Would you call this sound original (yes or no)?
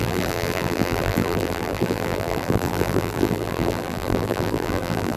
no